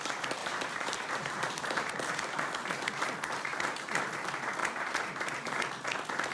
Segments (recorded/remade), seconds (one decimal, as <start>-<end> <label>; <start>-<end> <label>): 0.0-0.4 recorded; 0.4-2.1 remade; 2.1-3.5 recorded; 3.5-4.0 remade; 4.0-4.6 recorded; 4.6-5.7 remade; 5.7-6.3 recorded